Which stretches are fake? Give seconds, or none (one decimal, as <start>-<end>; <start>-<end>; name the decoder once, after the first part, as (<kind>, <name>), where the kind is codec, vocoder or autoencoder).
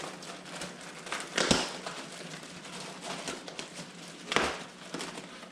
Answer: none